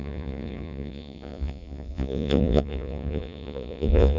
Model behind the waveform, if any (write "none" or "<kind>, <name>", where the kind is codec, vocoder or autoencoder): vocoder, Vocos